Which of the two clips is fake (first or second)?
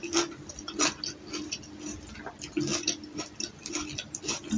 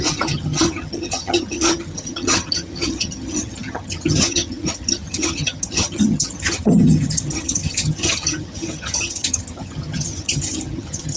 second